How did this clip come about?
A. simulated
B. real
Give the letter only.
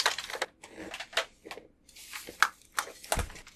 B